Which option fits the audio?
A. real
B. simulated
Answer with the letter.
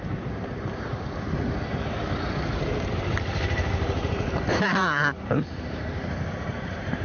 B